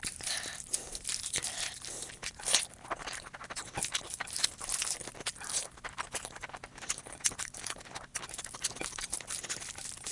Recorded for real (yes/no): yes